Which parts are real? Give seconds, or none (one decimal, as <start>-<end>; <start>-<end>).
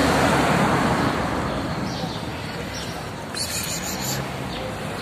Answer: 1.9-2.3; 3.8-5.0